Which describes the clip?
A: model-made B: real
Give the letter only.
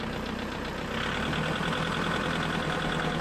B